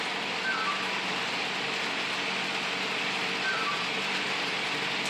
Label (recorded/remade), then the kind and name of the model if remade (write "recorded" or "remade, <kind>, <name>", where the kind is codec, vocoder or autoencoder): recorded